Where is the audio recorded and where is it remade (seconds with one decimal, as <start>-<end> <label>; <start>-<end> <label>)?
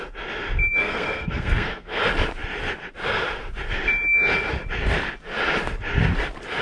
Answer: 0.0-0.8 recorded; 0.8-2.0 remade; 2.0-6.6 recorded